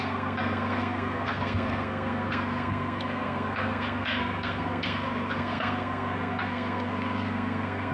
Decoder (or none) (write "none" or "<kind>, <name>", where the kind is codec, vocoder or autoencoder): codec, SNAC